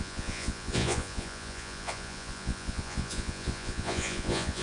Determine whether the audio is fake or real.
fake